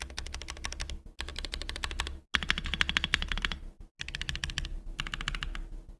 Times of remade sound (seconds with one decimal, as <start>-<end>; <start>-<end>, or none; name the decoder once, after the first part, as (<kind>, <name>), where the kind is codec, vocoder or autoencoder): none

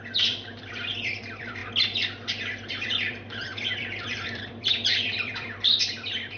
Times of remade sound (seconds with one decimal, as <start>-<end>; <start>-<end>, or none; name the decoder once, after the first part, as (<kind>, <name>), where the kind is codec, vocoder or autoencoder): 0.0-1.6 (vocoder, BigVGAN v2); 2.7-6.4

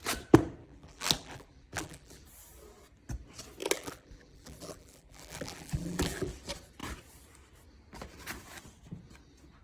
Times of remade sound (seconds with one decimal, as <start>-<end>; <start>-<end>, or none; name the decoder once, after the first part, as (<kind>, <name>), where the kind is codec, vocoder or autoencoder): 0.6-2.2 (vocoder, BigVGAN v2); 3.6-6.3